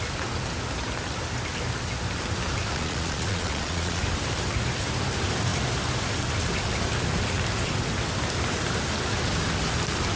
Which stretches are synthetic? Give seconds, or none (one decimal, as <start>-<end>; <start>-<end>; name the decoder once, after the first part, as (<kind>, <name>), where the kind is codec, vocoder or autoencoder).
2.7-4.0 (vocoder, Vocos)